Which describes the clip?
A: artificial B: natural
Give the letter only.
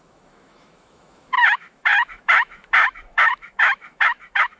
A